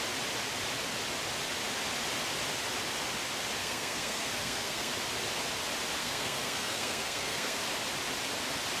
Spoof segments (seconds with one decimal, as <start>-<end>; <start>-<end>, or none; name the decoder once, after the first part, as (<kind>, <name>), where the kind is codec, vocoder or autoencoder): 3.6-4.9 (codec, SNAC); 6.0-7.6